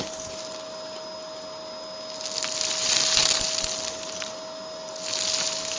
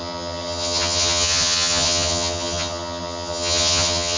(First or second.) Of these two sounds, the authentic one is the first